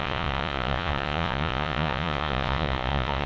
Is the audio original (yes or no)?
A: no